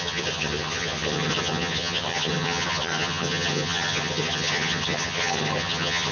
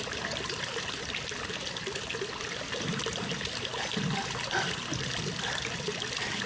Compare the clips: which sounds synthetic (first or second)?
first